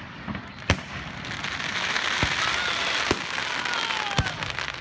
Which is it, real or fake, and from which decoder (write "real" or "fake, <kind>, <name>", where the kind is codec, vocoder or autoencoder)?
real